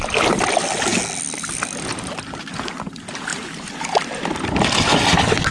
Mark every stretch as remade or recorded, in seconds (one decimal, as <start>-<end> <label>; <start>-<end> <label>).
0.0-5.5 recorded